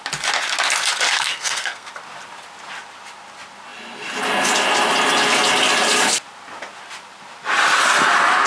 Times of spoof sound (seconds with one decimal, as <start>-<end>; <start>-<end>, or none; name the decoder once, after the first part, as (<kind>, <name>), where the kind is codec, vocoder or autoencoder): 1.1-1.9 (codec, SNAC)

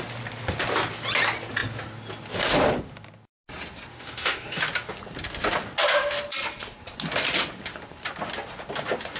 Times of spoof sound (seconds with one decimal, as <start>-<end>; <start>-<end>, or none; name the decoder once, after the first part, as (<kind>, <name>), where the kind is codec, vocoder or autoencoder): 3.9-4.6 (autoencoder, DAC-VAE)

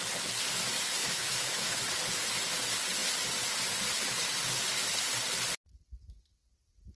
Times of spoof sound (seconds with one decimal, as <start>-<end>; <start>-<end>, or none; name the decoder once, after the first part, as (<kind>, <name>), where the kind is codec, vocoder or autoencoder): 1.0-1.8 (autoencoder, DAC-VAE)

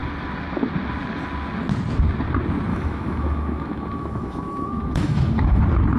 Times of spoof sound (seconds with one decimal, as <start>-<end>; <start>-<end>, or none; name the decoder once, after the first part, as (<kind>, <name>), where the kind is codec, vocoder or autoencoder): 2.7-5.6 (autoencoder, DAC-VAE)

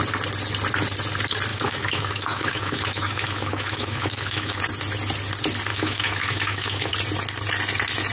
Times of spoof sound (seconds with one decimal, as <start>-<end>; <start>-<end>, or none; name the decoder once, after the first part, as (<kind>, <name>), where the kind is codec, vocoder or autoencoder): 1.5-4.6 (autoencoder, DAC-VAE); 5.7-6.9

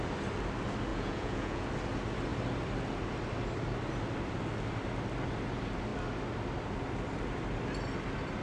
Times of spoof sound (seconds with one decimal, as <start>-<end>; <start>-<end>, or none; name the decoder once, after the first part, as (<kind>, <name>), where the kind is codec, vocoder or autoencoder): 0.9-1.7 (vocoder, Vocos)